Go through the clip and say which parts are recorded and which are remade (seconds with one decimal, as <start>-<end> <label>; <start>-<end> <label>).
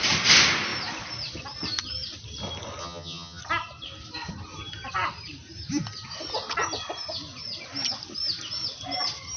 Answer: 0.0-2.8 recorded; 2.8-3.4 remade; 3.4-9.4 recorded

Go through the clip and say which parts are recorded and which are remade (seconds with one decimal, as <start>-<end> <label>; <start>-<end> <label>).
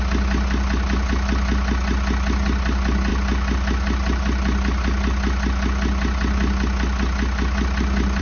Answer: 0.0-8.2 recorded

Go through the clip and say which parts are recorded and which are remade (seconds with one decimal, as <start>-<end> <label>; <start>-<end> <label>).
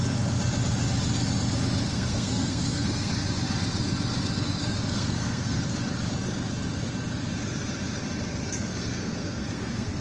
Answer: 0.0-1.9 recorded; 1.9-3.1 remade; 3.1-4.6 recorded; 4.6-5.6 remade; 5.6-8.7 recorded; 8.7-10.0 remade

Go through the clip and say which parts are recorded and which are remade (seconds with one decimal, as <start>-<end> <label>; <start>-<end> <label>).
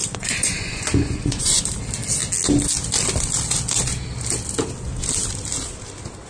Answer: 0.0-1.6 remade; 1.6-6.3 recorded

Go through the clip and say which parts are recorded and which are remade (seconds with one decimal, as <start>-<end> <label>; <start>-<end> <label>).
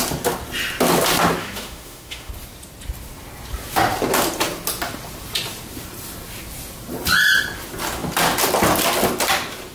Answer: 0.0-1.4 recorded; 1.4-2.3 remade; 2.3-9.7 recorded